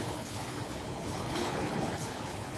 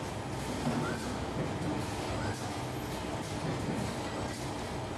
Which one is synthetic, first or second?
first